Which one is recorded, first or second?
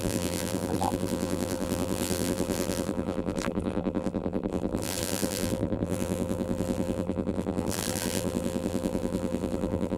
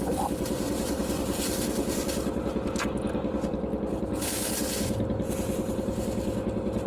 second